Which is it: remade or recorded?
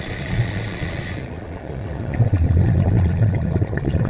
remade